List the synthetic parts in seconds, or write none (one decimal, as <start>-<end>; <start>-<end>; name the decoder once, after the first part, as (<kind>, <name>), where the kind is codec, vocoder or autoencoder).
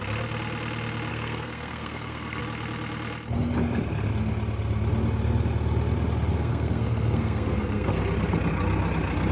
1.1-2.4 (codec, SNAC); 6.3-8.0